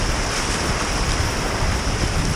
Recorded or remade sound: remade